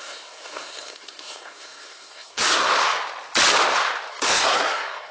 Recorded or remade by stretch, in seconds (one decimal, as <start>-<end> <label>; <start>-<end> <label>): 0.0-2.7 remade; 2.7-4.1 recorded; 4.1-5.1 remade

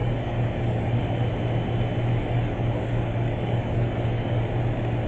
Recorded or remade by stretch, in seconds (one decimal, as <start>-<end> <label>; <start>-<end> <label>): 0.0-1.0 remade; 1.0-2.1 recorded; 2.1-4.4 remade; 4.4-5.1 recorded

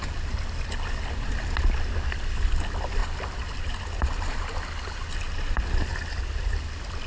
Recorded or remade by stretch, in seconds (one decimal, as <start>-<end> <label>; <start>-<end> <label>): 0.0-7.1 recorded

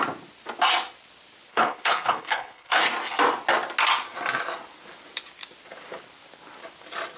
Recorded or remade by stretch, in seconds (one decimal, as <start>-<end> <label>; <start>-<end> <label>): 0.0-1.5 recorded; 1.5-2.8 remade; 2.8-7.2 recorded

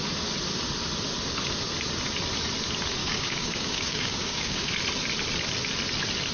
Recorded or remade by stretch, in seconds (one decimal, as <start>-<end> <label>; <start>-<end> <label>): 0.0-3.0 recorded; 3.0-4.7 remade; 4.7-6.3 recorded

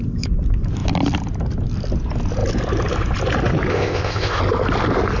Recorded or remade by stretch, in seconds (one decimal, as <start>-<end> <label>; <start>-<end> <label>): 0.0-3.7 recorded; 3.7-4.4 remade; 4.4-5.2 recorded

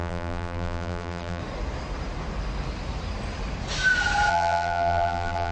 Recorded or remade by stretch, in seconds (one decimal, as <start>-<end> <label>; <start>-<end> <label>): 0.0-1.4 remade; 1.4-4.3 recorded; 4.3-5.5 remade

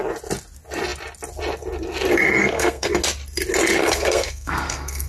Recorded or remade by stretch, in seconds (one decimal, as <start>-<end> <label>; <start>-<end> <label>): 0.0-2.4 recorded; 2.4-2.9 remade; 2.9-3.8 recorded; 3.8-5.1 remade